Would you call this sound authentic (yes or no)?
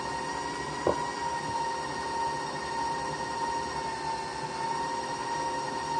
yes